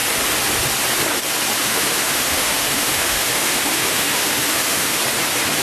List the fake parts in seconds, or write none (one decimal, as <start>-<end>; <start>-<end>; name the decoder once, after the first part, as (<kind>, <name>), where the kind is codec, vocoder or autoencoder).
1.6-5.0 (autoencoder, DAC-VAE)